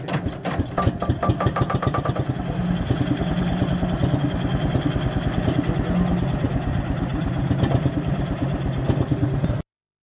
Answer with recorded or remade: recorded